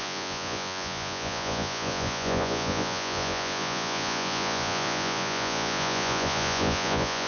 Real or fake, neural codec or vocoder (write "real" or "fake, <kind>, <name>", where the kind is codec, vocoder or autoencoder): fake, vocoder, Vocos